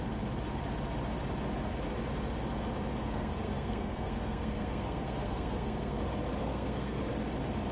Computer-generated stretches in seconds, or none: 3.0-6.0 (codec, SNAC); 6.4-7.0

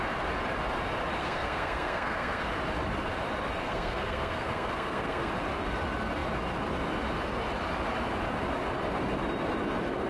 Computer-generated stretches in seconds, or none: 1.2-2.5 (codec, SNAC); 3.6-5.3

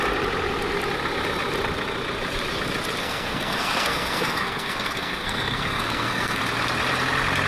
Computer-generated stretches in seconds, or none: 3.0-6.4 (codec, SNAC)